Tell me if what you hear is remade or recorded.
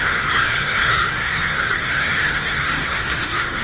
remade